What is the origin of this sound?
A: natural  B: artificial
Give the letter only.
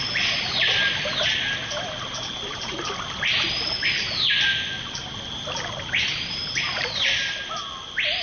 A